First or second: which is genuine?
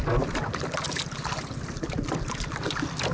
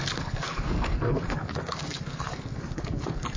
first